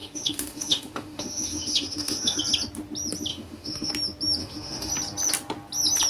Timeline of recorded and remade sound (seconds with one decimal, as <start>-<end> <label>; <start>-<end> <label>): 0.0-2.4 remade; 2.4-3.3 recorded; 3.3-3.9 remade; 3.9-4.4 recorded; 4.4-4.9 remade; 4.9-6.1 recorded